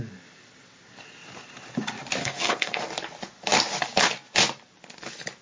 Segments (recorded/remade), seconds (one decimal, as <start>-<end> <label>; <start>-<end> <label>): 0.0-2.2 recorded; 2.2-2.8 remade; 2.8-5.4 recorded